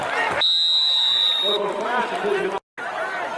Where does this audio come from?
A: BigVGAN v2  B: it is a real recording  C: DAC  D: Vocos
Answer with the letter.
B